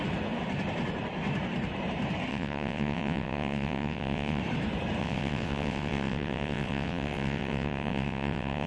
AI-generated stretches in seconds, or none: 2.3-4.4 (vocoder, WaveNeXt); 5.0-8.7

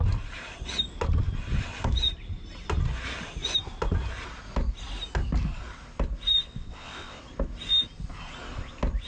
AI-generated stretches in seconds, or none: 6.5-7.2 (vocoder, WaveNeXt)

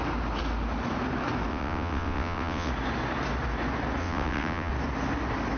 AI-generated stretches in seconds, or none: 1.5-2.7 (vocoder, WaveNeXt); 4.0-4.7

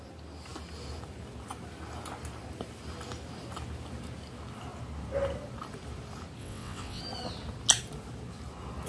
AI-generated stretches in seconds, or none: 6.4-7.0 (vocoder, WaveNeXt)

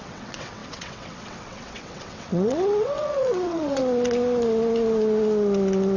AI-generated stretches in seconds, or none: 0.0-3.8 (vocoder, WaveNeXt)

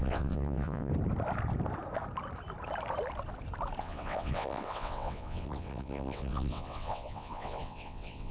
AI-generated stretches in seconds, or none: 0.0-0.9 (vocoder, WaveNeXt); 3.8-8.3

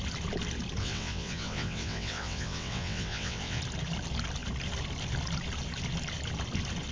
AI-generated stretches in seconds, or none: 0.8-3.6 (vocoder, WaveNeXt)

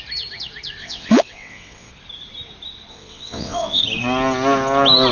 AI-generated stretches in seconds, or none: 0.8-1.9 (vocoder, WaveNeXt); 2.9-3.8